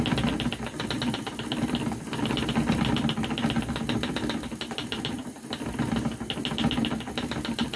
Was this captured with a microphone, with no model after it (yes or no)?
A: yes